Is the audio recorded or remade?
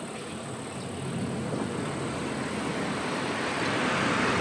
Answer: recorded